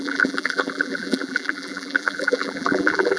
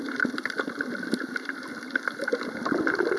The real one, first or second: second